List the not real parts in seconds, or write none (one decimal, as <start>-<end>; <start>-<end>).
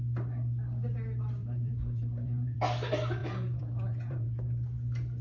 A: 1.4-2.6; 3.2-4.4